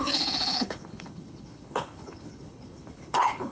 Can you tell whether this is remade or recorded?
remade